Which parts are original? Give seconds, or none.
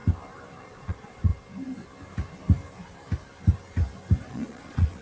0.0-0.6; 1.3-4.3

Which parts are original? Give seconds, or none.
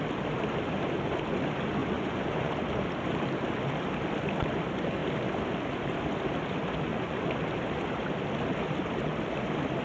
0.0-1.8; 2.5-6.9; 7.4-9.8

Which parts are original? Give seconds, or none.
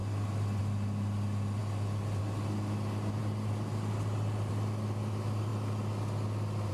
0.0-6.7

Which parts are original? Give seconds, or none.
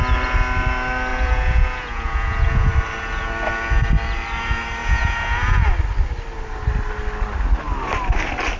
0.0-1.1; 2.7-4.8; 5.7-8.6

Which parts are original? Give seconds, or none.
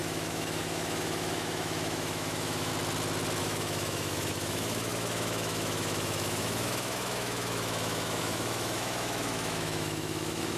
2.7-3.4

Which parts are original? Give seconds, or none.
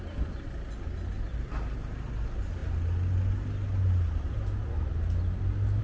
0.0-5.8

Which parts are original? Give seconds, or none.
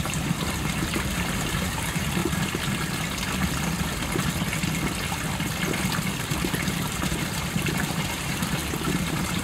2.2-6.2